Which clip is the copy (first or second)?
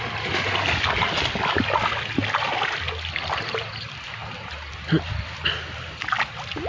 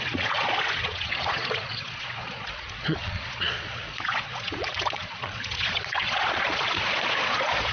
second